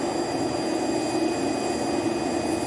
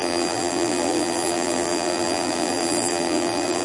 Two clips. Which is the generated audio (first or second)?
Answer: second